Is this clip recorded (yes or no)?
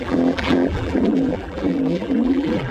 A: no